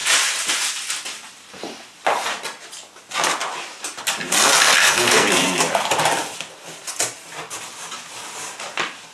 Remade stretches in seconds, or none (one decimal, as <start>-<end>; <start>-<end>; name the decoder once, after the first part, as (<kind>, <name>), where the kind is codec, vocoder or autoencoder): 4.7-5.6 (codec, SNAC)